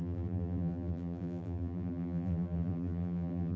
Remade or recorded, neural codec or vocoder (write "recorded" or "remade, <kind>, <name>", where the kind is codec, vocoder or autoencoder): remade, vocoder, BigVGAN v2